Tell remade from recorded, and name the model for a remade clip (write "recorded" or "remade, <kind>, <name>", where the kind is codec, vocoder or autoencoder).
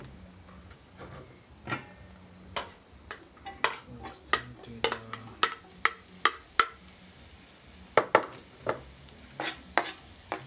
recorded